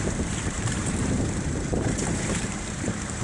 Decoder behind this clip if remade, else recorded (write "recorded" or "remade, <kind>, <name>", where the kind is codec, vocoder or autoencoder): remade, vocoder, BigVGAN v2